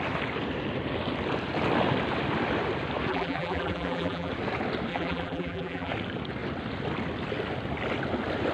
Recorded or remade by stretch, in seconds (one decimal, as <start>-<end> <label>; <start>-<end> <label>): 0.0-3.1 recorded; 3.1-4.3 remade; 4.3-4.9 recorded; 4.9-5.9 remade; 5.9-8.5 recorded